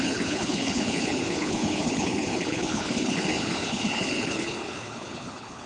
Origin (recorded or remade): remade